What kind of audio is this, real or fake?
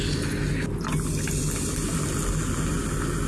real